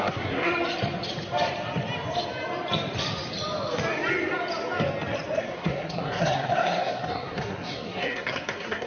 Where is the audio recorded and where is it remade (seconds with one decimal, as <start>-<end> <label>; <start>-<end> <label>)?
0.0-0.5 remade; 0.5-5.4 recorded; 5.4-8.9 remade